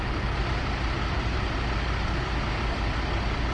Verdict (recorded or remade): recorded